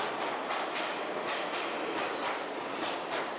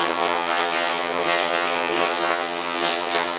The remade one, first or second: second